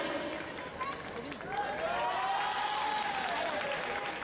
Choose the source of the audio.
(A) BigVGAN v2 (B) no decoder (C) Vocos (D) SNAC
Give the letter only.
B